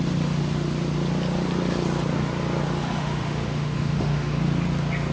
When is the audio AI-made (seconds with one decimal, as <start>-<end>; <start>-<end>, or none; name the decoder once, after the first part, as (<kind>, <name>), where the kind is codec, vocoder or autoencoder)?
3.0-4.4 (autoencoder, DAC-VAE)